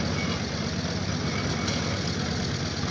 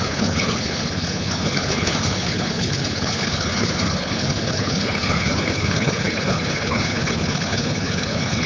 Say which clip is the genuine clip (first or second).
first